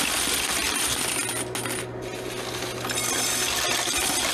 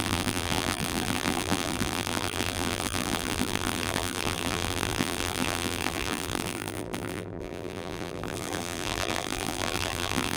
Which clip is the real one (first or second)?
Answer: first